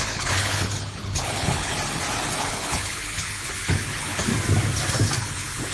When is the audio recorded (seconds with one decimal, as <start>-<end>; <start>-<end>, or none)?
1.7-2.4; 4.3-5.2

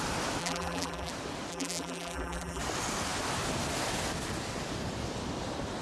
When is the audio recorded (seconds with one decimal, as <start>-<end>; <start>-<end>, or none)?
0.0-0.4; 1.1-1.5; 2.6-5.8

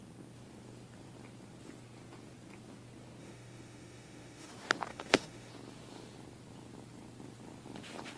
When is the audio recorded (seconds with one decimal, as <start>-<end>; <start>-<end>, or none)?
0.0-3.2; 4.5-4.9; 5.5-8.2

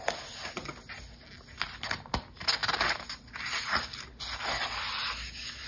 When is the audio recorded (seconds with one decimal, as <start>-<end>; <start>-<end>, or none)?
0.0-5.7

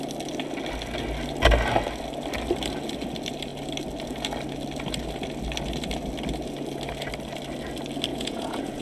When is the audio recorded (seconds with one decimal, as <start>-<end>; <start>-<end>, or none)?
0.0-8.1